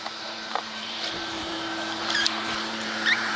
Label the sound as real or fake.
fake